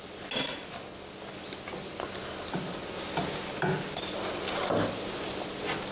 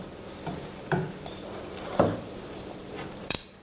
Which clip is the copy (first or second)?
second